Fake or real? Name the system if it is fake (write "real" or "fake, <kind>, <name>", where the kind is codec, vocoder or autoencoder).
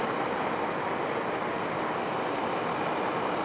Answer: real